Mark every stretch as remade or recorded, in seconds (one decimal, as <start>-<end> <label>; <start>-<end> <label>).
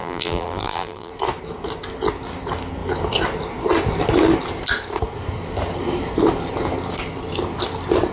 0.0-1.1 remade; 1.1-8.1 recorded